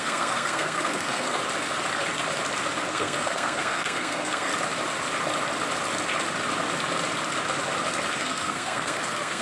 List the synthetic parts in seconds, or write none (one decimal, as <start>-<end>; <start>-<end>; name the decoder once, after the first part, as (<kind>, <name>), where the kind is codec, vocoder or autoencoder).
0.0-1.4 (codec, SNAC); 2.9-4.5; 8.2-9.4